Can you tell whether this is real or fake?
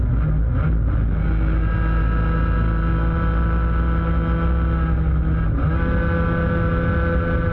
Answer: real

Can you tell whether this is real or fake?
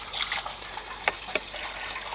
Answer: real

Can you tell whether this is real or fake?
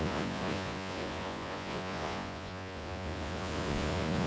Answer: fake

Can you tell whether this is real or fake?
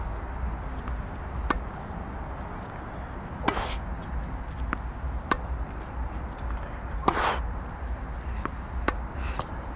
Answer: real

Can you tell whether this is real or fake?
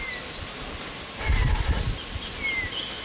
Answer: real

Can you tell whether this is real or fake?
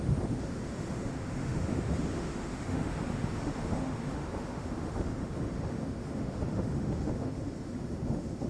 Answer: fake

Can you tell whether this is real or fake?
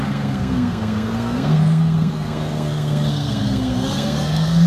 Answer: fake